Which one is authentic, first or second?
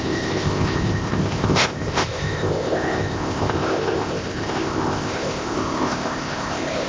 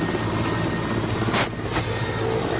second